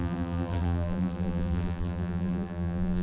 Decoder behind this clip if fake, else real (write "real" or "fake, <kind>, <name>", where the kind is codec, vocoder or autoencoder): fake, vocoder, BigVGAN v2